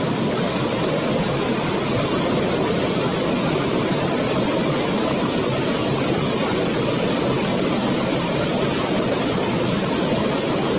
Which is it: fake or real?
real